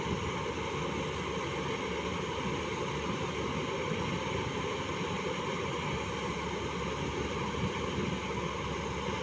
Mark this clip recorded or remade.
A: recorded